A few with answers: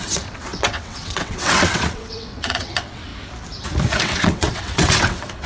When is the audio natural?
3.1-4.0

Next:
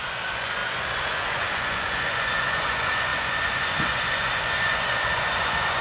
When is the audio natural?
none

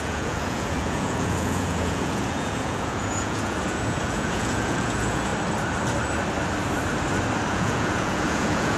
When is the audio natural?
5.3-7.5